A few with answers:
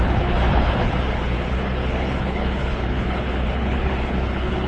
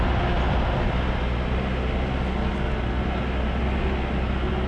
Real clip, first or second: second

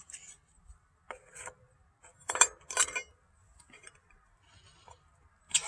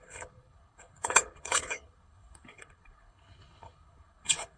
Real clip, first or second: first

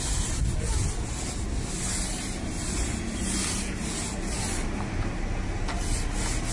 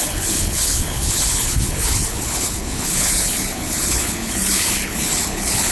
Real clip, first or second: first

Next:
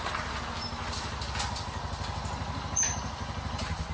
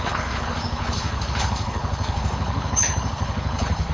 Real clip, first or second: first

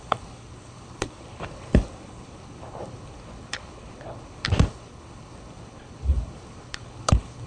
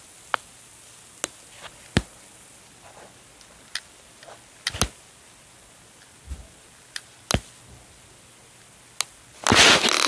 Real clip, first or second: second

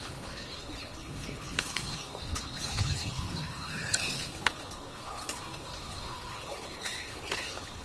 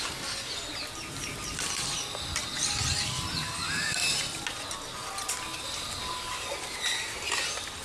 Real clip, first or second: second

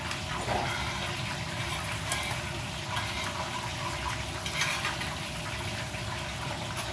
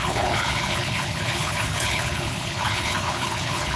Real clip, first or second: first